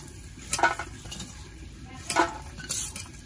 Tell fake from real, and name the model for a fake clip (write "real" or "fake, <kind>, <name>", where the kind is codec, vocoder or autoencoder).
real